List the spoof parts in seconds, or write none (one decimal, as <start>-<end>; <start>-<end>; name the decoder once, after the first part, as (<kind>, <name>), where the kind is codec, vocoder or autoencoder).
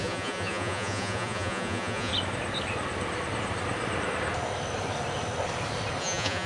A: 0.0-2.1 (vocoder, Vocos); 6.0-6.5